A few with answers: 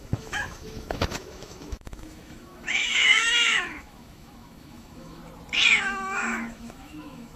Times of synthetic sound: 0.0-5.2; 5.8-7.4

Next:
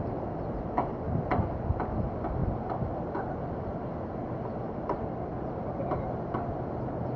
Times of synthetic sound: none

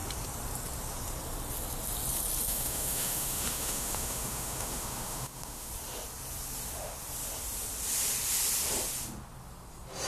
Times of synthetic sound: 2.5-5.7

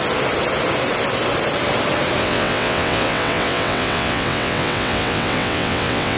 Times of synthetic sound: 2.2-6.2

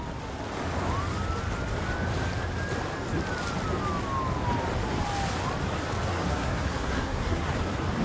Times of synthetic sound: 6.1-7.5

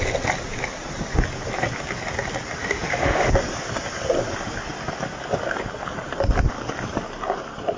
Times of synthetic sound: 2.6-3.3